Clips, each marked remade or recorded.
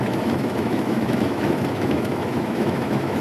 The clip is remade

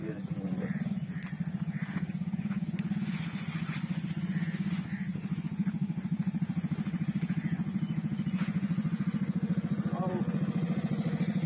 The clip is remade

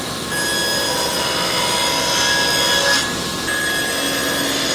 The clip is recorded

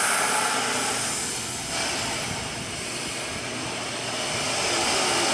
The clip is recorded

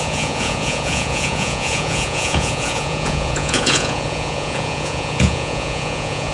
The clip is remade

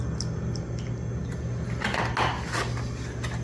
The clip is recorded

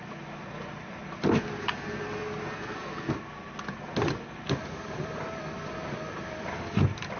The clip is recorded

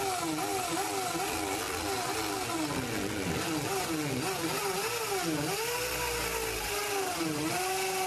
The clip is recorded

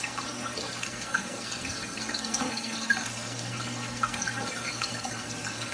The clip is remade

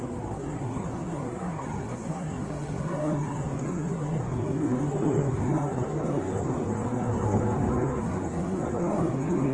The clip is remade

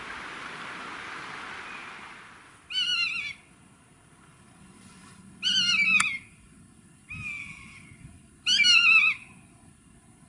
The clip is recorded